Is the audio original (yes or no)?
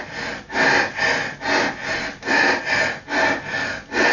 yes